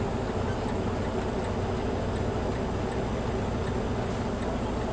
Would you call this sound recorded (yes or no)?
yes